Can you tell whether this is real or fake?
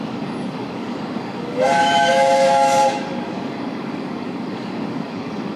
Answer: fake